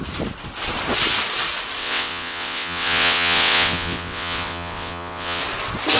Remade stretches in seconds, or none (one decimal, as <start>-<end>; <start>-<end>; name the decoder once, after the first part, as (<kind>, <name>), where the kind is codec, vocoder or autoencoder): 1.8-5.4 (vocoder, WaveNeXt)